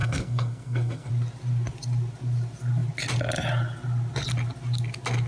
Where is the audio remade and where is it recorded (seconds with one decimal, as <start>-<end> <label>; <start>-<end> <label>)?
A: 0.0-1.1 remade; 1.1-5.3 recorded